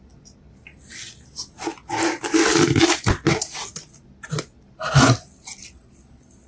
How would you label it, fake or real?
real